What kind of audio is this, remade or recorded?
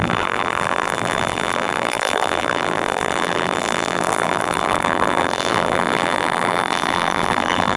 remade